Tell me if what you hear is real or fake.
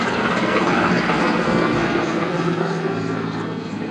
fake